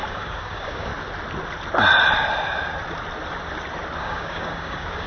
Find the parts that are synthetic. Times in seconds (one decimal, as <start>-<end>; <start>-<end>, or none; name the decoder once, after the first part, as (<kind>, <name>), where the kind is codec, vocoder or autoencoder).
0.0-0.9 (codec, DAC); 4.0-5.1